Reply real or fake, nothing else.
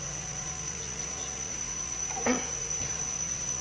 fake